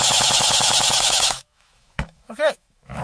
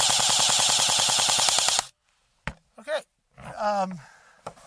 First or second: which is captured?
second